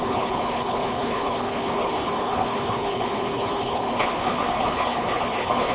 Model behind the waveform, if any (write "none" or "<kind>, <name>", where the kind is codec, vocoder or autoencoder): codec, HILCodec